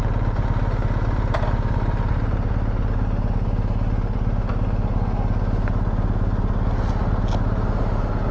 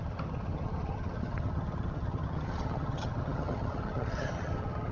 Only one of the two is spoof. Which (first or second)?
second